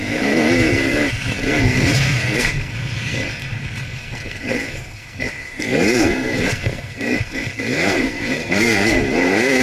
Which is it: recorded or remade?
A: remade